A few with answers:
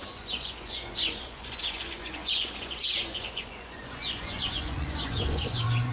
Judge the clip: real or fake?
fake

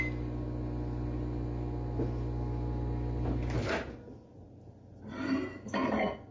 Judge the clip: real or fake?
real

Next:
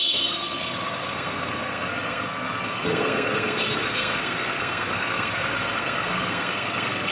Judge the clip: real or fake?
fake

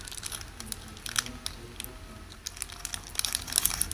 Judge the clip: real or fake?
real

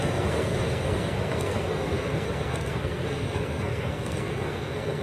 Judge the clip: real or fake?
fake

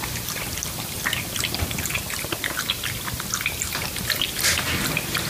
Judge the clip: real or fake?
real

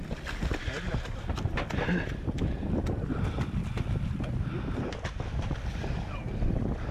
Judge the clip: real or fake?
real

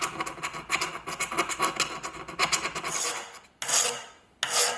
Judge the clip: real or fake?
real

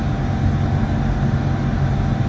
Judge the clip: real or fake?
real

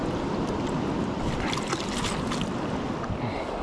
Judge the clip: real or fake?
real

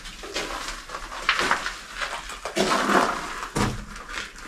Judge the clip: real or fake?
real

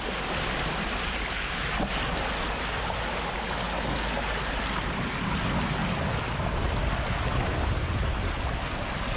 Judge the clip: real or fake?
real